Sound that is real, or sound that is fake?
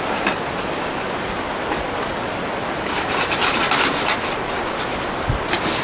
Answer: real